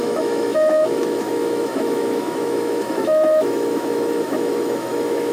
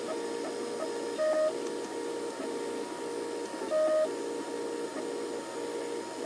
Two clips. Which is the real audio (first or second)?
second